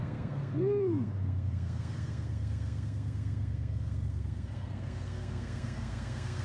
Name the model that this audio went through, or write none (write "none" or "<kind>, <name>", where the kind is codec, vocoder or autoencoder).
codec, SNAC